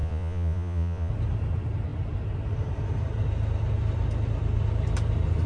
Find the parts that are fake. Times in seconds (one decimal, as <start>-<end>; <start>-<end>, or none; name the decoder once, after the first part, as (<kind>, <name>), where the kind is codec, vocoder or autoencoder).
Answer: 0.0-1.1 (vocoder, Vocos)